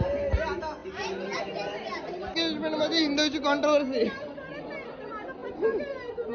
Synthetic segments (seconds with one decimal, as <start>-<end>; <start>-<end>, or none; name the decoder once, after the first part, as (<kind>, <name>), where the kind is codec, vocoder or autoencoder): none